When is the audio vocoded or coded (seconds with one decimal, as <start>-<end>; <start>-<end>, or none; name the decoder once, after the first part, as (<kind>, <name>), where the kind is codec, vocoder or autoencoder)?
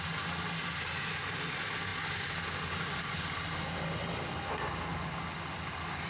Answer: none